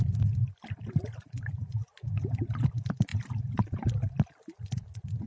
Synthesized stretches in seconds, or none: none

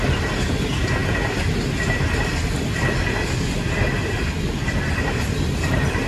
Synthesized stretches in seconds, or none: none